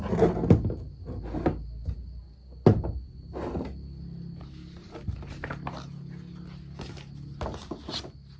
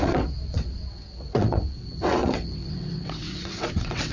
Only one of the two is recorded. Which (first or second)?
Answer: first